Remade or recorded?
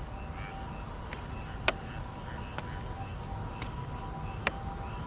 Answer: recorded